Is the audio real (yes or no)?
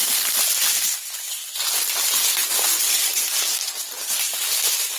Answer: yes